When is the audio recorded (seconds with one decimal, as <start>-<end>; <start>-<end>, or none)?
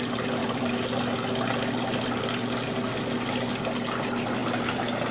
0.0-5.1